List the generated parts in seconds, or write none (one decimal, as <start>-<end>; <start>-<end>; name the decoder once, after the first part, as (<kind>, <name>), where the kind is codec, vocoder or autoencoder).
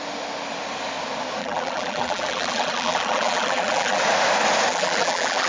1.4-4.0 (vocoder, BigVGAN v2); 4.7-5.5